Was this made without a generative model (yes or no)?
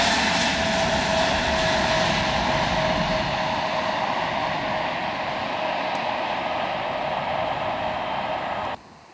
yes